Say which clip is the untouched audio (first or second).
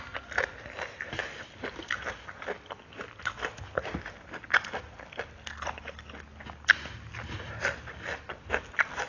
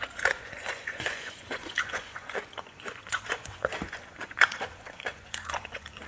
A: first